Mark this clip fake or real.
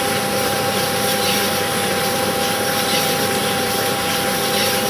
fake